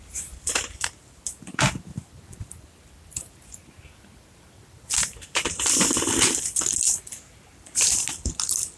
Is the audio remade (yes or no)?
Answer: no